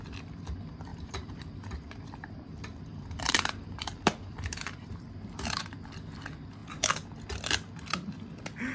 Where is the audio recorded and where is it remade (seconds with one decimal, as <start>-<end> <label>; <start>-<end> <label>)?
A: 0.0-0.9 recorded; 0.9-5.6 remade; 5.6-8.7 recorded